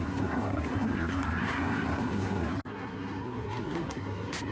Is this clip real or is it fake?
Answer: fake